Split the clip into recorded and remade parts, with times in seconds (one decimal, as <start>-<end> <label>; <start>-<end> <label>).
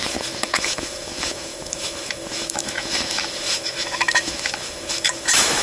0.0-5.6 remade